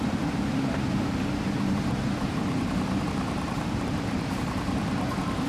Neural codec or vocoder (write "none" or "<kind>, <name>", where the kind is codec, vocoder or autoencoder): vocoder, BigVGAN v2